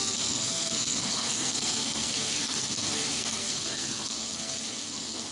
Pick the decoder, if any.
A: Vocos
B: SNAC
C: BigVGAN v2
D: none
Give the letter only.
B